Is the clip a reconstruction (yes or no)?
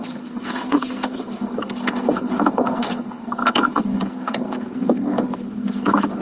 yes